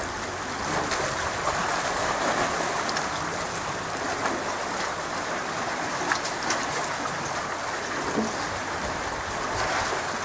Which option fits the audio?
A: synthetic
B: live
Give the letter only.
B